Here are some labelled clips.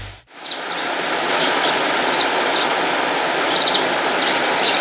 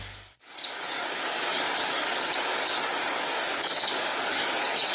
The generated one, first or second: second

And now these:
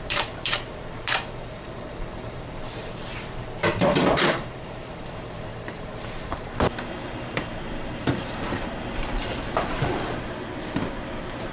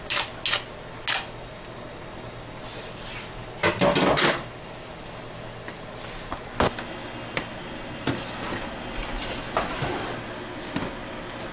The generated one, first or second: first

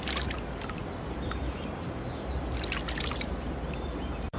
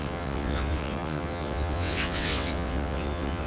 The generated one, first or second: second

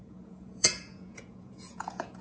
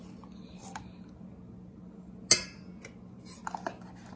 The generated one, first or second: first